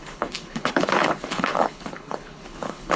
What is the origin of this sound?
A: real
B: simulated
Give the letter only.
B